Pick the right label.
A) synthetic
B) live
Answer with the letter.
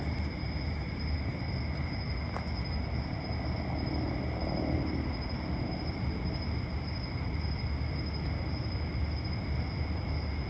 B